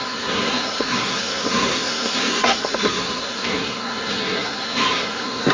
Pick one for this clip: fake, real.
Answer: fake